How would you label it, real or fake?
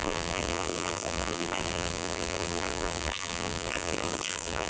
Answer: fake